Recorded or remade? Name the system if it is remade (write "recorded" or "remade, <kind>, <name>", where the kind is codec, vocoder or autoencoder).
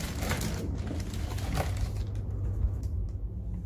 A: recorded